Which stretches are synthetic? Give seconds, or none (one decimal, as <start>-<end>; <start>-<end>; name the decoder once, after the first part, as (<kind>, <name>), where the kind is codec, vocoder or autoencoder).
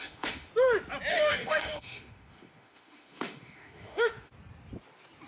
0.0-0.5 (autoencoder, DAC-VAE); 1.1-4.3